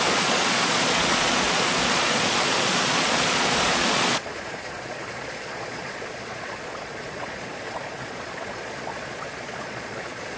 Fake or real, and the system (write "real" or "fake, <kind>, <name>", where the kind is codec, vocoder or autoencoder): fake, vocoder, Vocos